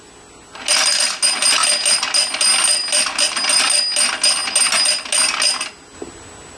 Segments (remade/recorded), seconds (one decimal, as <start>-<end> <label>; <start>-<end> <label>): 0.0-6.6 recorded